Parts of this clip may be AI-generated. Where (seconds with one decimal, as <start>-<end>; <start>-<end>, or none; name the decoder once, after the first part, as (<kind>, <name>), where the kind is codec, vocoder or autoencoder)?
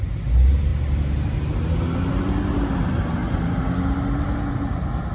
none